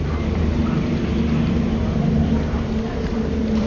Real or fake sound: fake